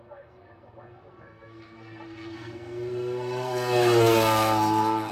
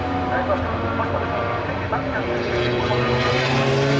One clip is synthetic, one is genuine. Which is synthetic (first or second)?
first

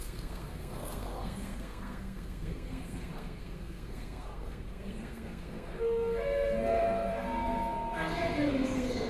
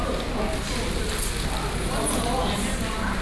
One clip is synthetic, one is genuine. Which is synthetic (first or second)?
first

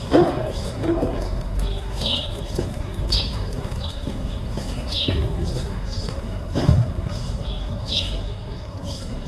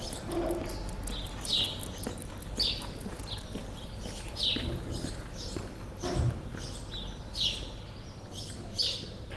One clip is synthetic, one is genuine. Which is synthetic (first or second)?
first